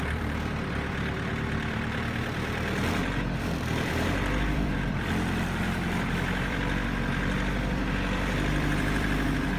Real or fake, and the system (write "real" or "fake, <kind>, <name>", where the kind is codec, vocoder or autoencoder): fake, vocoder, BigVGAN v2